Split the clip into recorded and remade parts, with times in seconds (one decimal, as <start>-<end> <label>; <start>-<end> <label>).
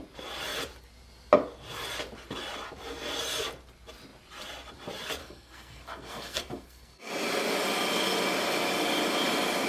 0.0-5.2 recorded; 5.2-7.1 remade; 7.1-9.7 recorded